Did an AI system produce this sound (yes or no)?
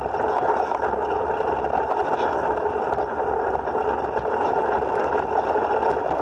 no